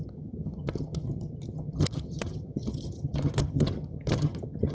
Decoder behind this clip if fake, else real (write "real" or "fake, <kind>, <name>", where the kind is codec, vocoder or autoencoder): fake, vocoder, HiFi-GAN